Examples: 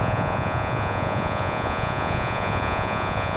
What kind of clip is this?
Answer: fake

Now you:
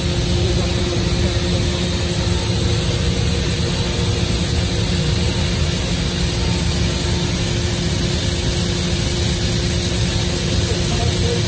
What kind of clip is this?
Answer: real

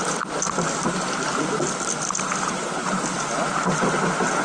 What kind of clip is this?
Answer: real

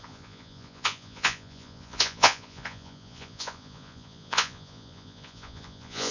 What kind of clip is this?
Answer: fake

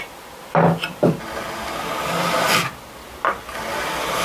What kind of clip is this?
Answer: real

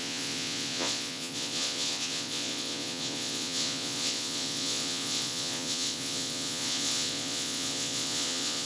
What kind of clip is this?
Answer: fake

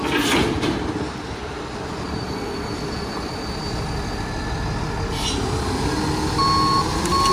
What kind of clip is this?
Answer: real